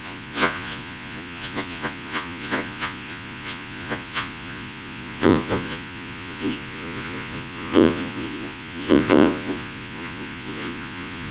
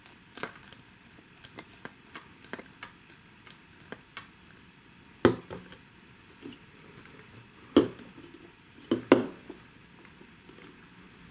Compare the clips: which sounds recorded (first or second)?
second